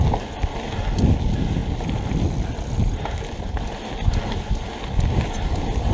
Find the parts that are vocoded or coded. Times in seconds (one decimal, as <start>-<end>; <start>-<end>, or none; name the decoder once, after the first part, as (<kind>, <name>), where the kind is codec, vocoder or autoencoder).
none